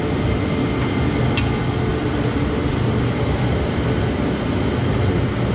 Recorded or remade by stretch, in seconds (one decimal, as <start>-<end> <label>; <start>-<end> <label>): 0.0-5.5 recorded